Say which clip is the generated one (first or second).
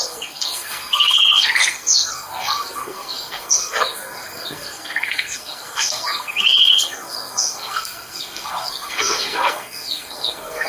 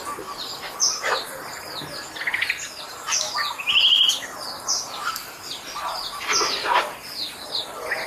first